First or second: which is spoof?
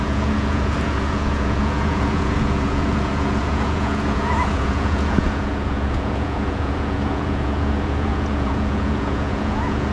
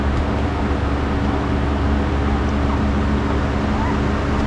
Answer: first